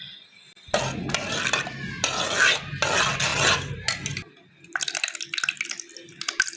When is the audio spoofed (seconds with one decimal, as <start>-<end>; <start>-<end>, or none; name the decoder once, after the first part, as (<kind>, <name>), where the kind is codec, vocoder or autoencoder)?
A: none